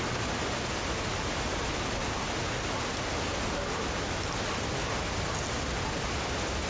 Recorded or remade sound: recorded